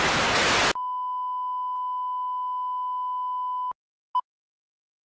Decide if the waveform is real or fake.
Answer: real